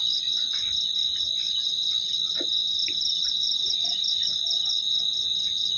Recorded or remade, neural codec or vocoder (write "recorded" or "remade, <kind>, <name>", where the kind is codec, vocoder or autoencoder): recorded